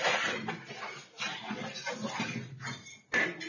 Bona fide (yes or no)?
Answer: yes